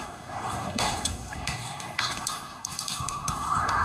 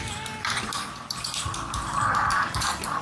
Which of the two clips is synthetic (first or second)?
first